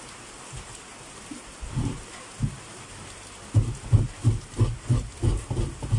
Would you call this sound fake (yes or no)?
no